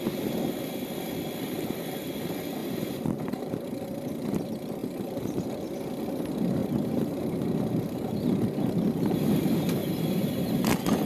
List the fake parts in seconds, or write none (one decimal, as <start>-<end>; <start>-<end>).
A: 2.6-3.6; 4.8-5.5; 6.6-9.4; 9.8-10.7